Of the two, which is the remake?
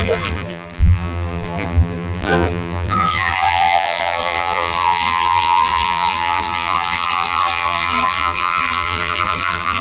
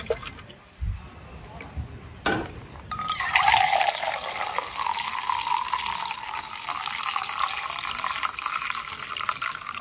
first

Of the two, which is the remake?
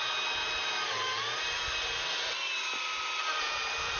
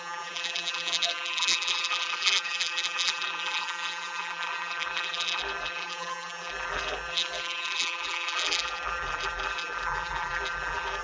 second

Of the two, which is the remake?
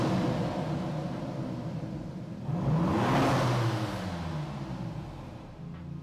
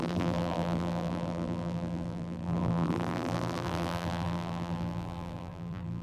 second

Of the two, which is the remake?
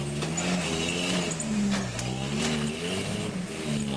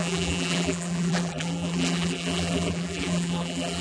second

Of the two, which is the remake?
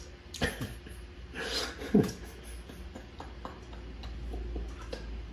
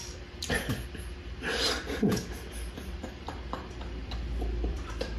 second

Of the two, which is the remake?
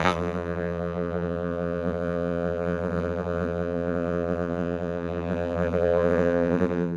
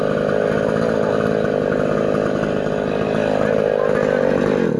first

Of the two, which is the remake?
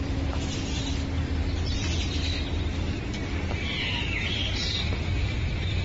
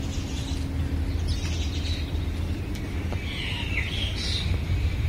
first